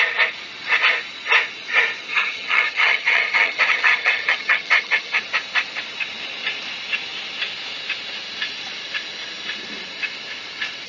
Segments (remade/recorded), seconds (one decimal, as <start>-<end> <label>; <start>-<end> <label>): 0.0-2.1 recorded; 2.1-5.2 remade; 5.2-10.9 recorded